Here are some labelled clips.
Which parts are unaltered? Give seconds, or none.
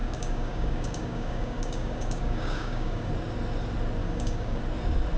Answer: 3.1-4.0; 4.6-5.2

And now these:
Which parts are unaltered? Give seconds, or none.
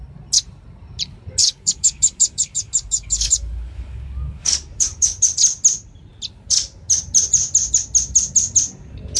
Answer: 0.0-1.4; 5.3-9.2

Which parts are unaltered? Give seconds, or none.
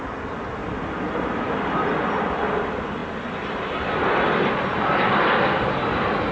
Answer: 0.0-6.3